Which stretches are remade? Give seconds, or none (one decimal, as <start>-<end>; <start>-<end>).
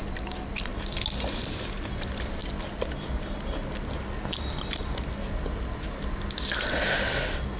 0.0-0.7; 1.9-2.4; 6.6-7.6